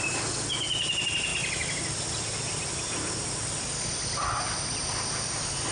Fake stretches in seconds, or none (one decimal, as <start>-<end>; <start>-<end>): none